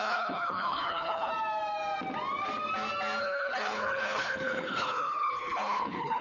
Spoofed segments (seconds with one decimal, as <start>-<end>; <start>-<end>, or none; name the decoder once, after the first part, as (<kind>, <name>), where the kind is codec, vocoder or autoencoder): 0.0-1.3 (codec, HILCodec); 3.2-6.2